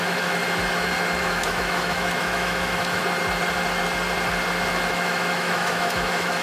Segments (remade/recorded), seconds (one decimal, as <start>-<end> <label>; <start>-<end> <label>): 0.0-0.4 remade; 0.4-1.2 recorded; 1.2-3.0 remade; 3.0-4.9 recorded; 4.9-6.4 remade

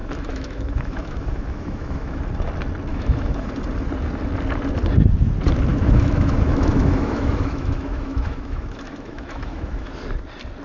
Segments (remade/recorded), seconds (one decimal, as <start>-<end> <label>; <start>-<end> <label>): 0.0-2.2 remade; 2.2-2.9 recorded; 2.9-3.5 remade; 3.5-5.7 recorded; 5.7-9.9 remade; 9.9-10.6 recorded

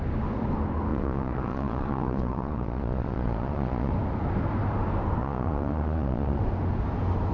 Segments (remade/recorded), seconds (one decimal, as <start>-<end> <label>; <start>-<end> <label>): 0.0-0.9 recorded; 0.9-3.9 remade; 3.9-5.2 recorded; 5.2-6.4 remade; 6.4-7.3 recorded

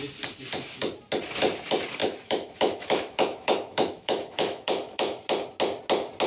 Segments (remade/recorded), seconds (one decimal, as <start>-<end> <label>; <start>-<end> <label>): 0.0-2.0 recorded; 2.0-5.2 remade; 5.2-6.3 recorded

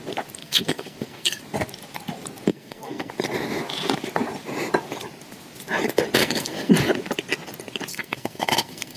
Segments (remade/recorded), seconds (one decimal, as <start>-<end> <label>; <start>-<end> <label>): 0.0-0.4 recorded; 0.4-1.4 remade; 1.4-2.5 recorded; 2.5-3.1 remade; 3.1-6.2 recorded; 6.2-6.7 remade; 6.7-7.9 recorded; 7.9-9.0 remade

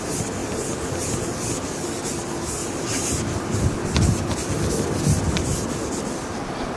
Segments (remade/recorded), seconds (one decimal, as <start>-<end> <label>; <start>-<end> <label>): 0.0-2.6 recorded; 2.6-6.8 remade